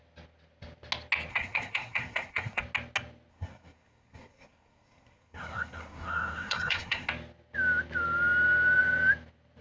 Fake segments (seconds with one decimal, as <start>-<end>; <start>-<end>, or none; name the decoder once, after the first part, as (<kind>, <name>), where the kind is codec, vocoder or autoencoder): 1.3-2.6 (codec, SNAC); 3.3-7.1